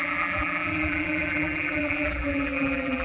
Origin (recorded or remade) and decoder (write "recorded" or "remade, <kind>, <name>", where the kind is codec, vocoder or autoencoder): remade, vocoder, BigVGAN v2